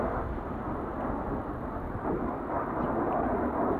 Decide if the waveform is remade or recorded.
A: recorded